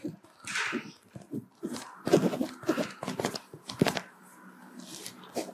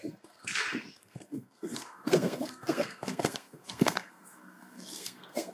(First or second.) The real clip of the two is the first